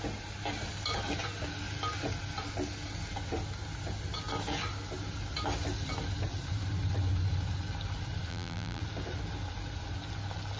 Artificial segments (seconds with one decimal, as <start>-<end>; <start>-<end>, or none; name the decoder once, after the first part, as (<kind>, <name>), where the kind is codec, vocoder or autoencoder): 8.3-8.8 (vocoder, BigVGAN v2)